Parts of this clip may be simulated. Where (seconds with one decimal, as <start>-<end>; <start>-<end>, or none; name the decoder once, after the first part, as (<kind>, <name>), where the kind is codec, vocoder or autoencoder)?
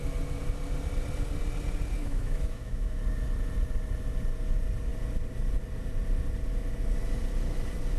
2.0-3.0 (autoencoder, DAC-VAE)